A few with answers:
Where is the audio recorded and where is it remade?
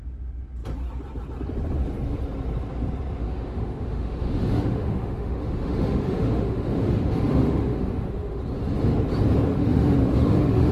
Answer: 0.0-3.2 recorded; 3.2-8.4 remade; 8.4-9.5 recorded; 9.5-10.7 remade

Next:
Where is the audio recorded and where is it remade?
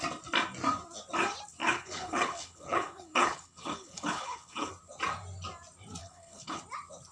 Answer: 0.0-1.6 recorded; 1.6-4.7 remade; 4.7-6.0 recorded; 6.0-6.6 remade; 6.6-7.1 recorded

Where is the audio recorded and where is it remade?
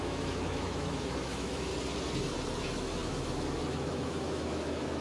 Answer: 0.0-1.7 remade; 1.7-2.6 recorded; 2.6-5.0 remade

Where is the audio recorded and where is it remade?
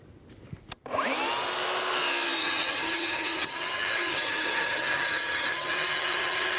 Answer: 0.0-2.4 recorded; 2.4-6.6 remade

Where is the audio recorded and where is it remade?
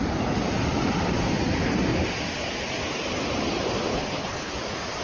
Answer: 0.0-3.9 recorded; 3.9-4.5 remade; 4.5-5.0 recorded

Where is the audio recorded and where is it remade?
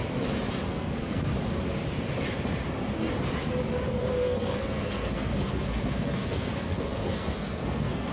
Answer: 0.0-0.7 recorded; 0.7-1.3 remade; 1.3-3.9 recorded; 3.9-8.1 remade